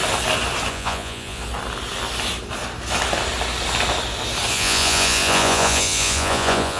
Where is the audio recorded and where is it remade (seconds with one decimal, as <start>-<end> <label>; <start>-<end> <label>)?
0.0-0.7 recorded; 0.7-1.4 remade; 1.4-4.5 recorded; 4.5-6.8 remade